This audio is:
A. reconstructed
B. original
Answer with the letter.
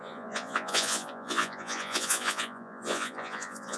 A